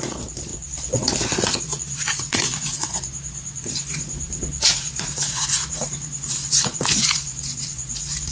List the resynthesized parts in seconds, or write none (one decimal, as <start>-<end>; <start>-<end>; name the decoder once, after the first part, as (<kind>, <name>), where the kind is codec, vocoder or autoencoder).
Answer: 0.0-8.3 (vocoder, Vocos)